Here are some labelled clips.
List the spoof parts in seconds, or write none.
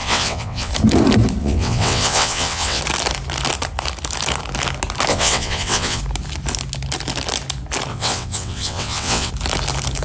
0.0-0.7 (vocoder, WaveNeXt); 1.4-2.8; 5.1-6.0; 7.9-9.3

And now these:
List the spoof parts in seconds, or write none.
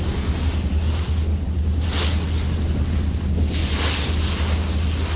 none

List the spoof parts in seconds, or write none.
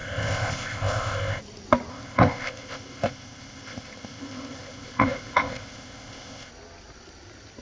0.0-1.4 (codec, ZipCodec); 1.9-6.5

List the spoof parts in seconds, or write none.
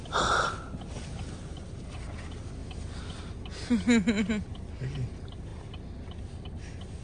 none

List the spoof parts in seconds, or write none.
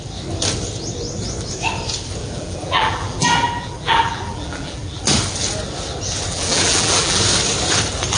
2.2-5.0 (vocoder, BigVGAN v2); 6.3-7.2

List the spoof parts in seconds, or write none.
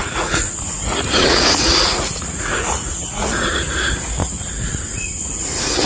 0.0-3.5 (vocoder, Vocos); 4.2-5.9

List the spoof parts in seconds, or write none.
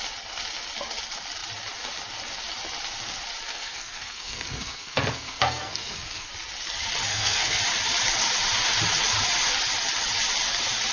3.5-6.3 (codec, SNAC); 7.1-7.6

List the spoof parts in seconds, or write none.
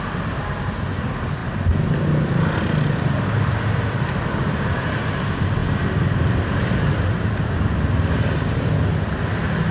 none